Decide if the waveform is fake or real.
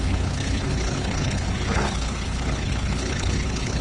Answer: fake